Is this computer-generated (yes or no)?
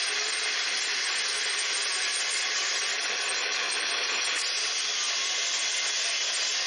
no